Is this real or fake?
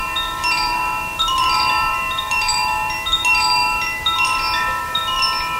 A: fake